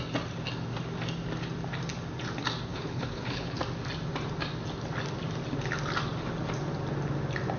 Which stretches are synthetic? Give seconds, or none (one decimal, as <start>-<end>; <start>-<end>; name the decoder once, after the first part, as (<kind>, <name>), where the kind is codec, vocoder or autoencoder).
2.7-3.6 (codec, HILCodec)